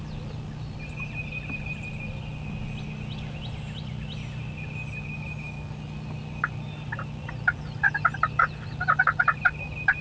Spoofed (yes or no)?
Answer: no